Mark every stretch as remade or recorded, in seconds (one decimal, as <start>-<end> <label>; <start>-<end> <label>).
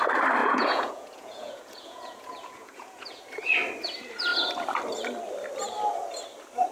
0.0-0.4 recorded; 0.4-3.2 remade; 3.2-6.7 recorded